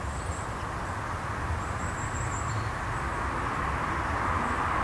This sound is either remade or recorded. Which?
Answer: recorded